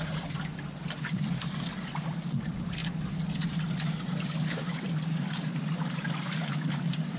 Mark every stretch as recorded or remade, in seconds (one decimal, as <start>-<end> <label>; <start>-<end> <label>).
0.0-7.2 recorded